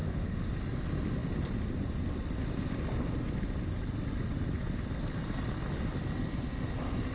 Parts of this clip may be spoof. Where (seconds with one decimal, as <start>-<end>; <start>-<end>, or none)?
0.0-0.5